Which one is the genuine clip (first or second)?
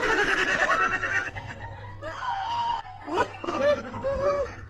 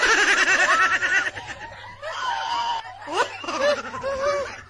second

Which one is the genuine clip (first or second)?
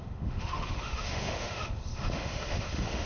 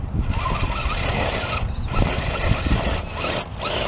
second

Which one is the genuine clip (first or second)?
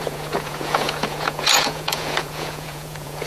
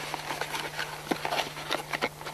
second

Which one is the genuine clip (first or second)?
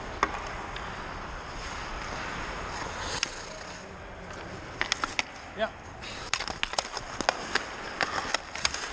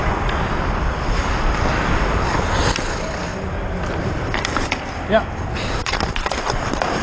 first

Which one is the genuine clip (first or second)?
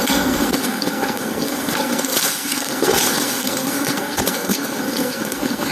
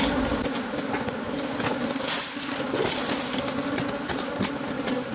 second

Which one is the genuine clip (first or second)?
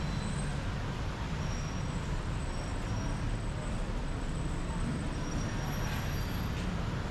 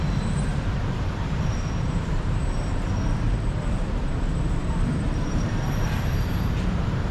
first